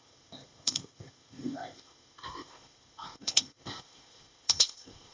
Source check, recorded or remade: remade